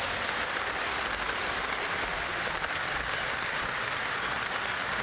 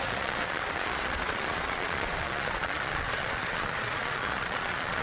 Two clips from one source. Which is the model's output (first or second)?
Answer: second